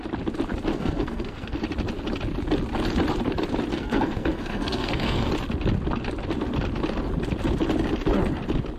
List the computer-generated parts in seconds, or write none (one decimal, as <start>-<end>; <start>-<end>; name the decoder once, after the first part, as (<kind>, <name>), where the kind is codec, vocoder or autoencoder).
0.7-1.6 (codec, SNAC); 3.7-5.3